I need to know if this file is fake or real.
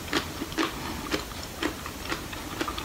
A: real